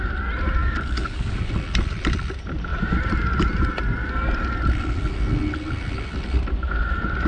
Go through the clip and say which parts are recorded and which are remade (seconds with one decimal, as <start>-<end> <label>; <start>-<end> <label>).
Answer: 0.0-0.6 recorded; 0.6-1.5 remade; 1.5-7.3 recorded